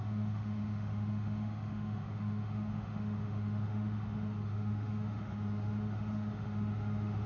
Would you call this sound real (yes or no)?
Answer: no